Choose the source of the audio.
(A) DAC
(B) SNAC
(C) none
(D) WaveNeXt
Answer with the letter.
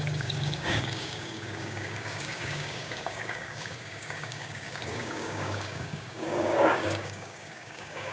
A